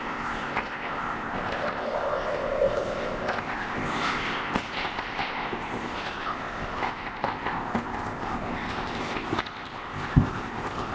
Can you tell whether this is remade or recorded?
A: remade